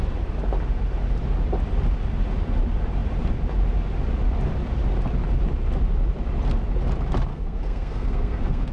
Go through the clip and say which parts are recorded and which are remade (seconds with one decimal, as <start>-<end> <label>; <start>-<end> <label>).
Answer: 0.0-7.3 recorded; 7.3-8.7 remade

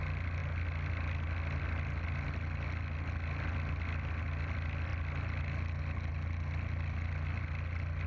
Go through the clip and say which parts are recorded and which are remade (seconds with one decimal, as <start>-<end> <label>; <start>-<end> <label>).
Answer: 0.0-8.1 recorded

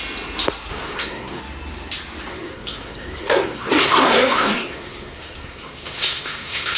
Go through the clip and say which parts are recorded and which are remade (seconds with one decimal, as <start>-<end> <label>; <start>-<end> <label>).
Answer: 0.0-0.7 recorded; 0.7-1.4 remade; 1.4-2.3 recorded; 2.3-6.8 remade